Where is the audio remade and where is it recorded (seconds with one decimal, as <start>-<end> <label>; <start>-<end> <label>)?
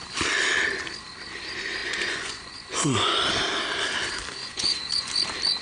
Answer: 0.0-1.8 recorded; 1.8-3.2 remade; 3.2-4.4 recorded; 4.4-5.1 remade; 5.1-5.6 recorded